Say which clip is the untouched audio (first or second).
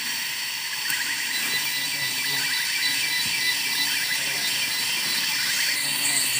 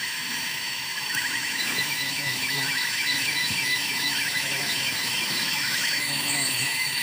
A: first